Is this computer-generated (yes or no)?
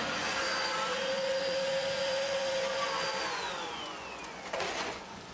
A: yes